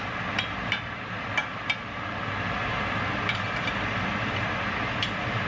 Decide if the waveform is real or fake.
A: real